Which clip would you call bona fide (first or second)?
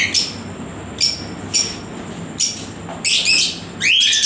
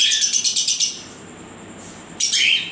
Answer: first